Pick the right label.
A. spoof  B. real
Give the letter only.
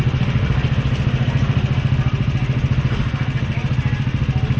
B